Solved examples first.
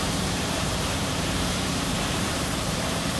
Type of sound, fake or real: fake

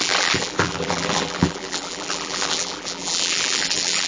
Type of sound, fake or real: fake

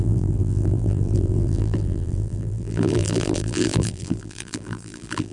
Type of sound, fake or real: fake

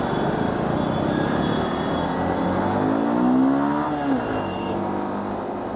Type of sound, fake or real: real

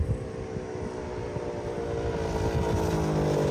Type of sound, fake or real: real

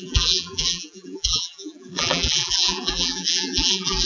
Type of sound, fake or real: fake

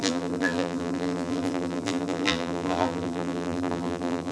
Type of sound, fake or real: fake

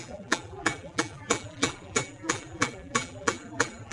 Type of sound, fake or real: fake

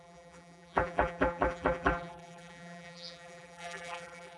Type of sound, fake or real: fake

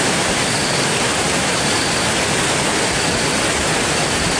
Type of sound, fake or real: real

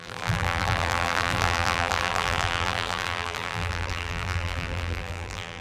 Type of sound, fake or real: fake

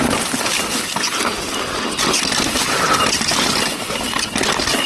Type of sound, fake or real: real